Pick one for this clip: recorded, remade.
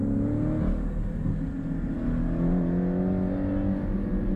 recorded